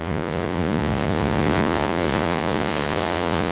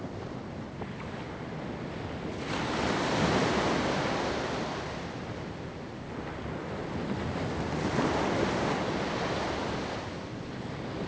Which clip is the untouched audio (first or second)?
second